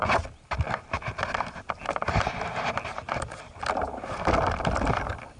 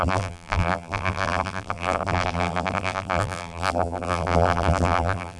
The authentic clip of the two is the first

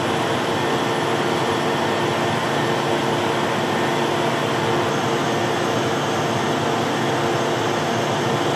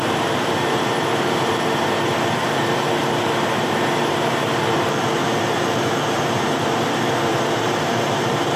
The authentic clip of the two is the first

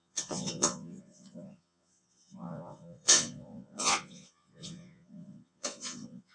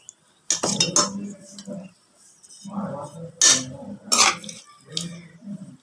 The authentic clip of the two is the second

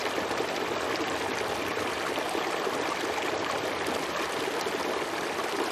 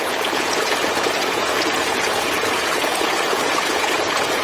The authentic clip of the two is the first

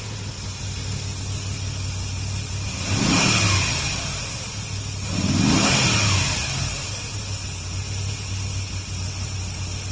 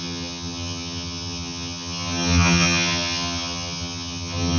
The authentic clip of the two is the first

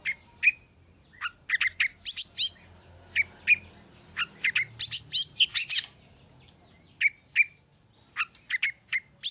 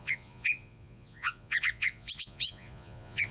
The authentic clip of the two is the first